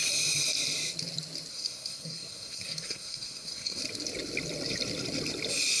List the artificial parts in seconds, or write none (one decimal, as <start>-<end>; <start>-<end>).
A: 1.5-3.8